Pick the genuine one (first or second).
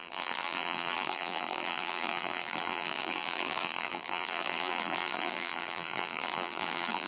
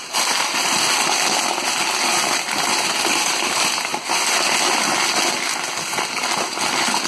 second